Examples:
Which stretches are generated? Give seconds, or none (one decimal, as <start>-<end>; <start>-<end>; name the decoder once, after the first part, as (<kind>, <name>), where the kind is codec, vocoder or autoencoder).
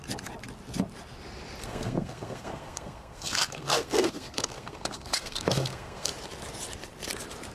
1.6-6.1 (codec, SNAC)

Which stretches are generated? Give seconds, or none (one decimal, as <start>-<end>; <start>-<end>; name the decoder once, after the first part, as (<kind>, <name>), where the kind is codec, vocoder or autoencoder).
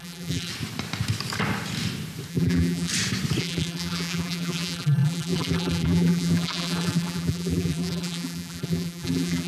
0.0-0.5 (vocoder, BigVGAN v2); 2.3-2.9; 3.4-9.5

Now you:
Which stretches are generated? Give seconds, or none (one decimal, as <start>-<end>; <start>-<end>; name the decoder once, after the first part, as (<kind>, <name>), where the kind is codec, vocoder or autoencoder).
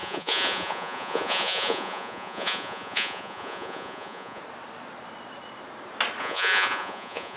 0.0-4.4 (vocoder, Vocos); 6.2-7.4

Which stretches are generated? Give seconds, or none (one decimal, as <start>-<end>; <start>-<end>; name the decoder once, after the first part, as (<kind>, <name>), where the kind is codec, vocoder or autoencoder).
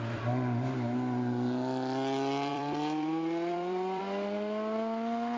2.5-4.0 (vocoder, BigVGAN v2)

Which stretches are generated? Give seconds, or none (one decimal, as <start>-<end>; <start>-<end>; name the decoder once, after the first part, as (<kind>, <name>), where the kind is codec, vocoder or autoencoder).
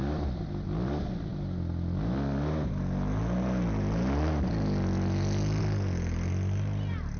none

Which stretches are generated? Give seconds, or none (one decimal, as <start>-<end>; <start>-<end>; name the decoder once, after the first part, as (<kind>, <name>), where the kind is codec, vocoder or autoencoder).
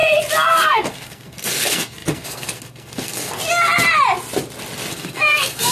0.5-3.4 (codec, SNAC); 4.9-5.7